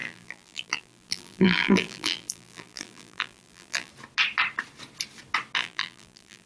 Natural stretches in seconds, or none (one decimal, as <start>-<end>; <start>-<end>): 3.9-5.6